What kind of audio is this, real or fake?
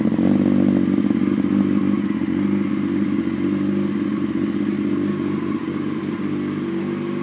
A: real